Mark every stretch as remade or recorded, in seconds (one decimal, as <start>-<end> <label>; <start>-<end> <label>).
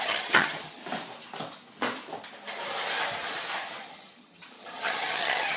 0.0-0.8 remade; 0.8-3.9 recorded; 3.9-5.6 remade